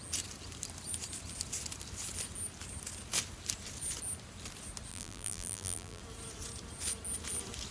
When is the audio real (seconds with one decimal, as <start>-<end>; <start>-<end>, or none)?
0.0-4.9; 6.0-7.7